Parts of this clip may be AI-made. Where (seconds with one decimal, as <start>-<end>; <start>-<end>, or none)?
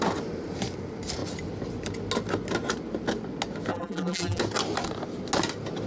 3.7-4.4